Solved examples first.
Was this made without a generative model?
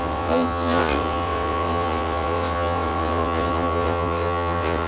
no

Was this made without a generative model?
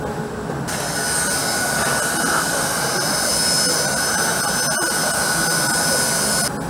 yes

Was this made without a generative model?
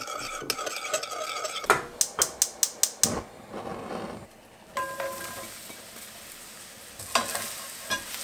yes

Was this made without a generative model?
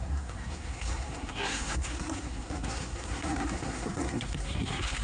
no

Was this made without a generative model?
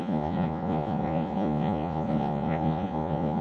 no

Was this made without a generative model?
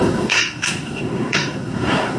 no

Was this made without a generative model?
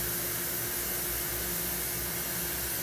yes